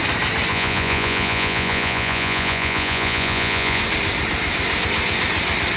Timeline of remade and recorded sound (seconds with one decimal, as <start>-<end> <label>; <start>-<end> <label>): 0.0-0.5 recorded; 0.5-3.8 remade; 3.8-5.8 recorded